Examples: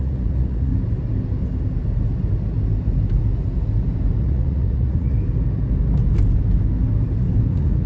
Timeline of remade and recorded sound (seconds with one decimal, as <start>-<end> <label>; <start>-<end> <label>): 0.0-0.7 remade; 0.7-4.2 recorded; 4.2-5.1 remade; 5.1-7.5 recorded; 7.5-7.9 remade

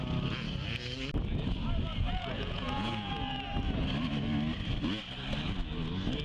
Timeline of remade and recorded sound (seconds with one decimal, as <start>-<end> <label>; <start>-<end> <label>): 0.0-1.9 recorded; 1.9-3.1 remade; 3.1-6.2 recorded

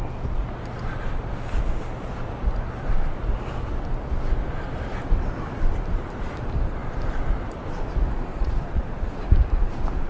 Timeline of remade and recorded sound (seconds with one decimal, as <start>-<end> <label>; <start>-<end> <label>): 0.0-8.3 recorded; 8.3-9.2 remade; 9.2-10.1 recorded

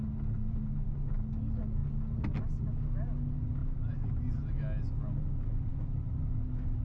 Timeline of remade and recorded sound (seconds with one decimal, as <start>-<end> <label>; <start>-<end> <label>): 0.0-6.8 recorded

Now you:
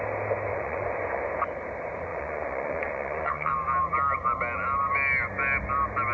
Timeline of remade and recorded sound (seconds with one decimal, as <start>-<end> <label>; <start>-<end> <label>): 0.0-0.5 recorded; 0.5-1.2 remade; 1.2-2.1 recorded; 2.1-3.5 remade; 3.5-6.1 recorded

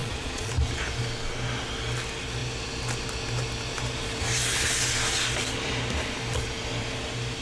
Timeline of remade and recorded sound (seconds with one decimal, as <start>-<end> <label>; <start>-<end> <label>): 0.0-0.5 remade; 0.5-7.4 recorded

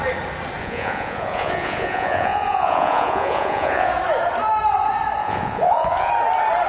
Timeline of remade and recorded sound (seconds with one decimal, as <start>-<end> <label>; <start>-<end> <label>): 0.0-0.6 recorded; 0.6-3.9 remade; 3.9-5.2 recorded; 5.2-6.1 remade; 6.1-6.7 recorded